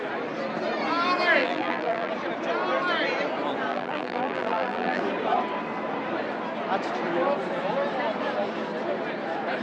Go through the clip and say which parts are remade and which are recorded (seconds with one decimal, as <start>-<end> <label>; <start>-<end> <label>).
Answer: 0.0-1.4 recorded; 1.4-2.1 remade; 2.1-3.7 recorded; 3.7-5.0 remade; 5.0-9.6 recorded